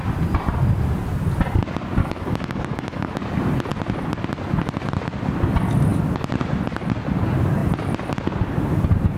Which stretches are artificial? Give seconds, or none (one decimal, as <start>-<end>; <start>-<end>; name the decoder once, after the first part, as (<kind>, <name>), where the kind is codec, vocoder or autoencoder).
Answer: 2.0-3.1 (codec, DAC)